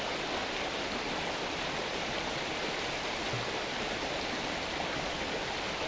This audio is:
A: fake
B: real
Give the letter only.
B